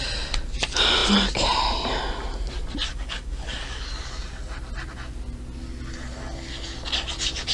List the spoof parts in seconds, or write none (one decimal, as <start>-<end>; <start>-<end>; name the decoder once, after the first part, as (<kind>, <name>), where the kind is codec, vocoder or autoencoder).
2.9-4.1 (codec, DAC)